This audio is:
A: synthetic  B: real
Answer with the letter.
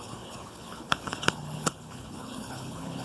A